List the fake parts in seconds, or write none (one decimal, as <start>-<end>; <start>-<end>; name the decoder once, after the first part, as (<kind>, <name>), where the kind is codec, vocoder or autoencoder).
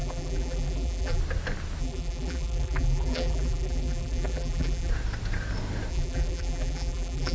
0.0-1.2 (vocoder, BigVGAN v2); 1.8-4.9; 5.9-7.3